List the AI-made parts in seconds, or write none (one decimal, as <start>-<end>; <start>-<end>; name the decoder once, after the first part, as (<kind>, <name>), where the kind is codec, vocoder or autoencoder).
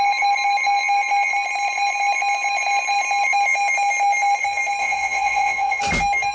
4.8-5.8 (vocoder, WaveNeXt)